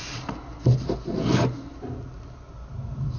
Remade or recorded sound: recorded